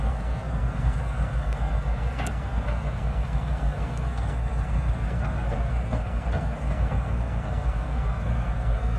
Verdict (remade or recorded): remade